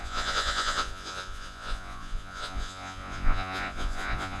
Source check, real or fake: fake